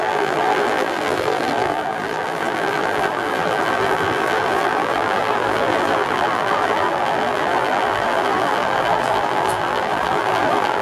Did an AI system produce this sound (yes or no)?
yes